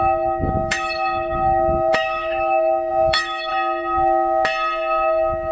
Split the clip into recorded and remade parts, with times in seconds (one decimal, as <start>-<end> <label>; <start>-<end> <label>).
0.0-3.5 remade; 3.5-5.5 recorded